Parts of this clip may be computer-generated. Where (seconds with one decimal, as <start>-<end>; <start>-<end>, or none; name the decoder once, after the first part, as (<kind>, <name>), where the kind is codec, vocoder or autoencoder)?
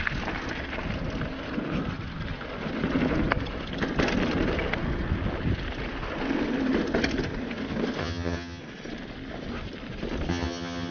8.0-8.6 (vocoder, HiFi-GAN); 10.3-10.9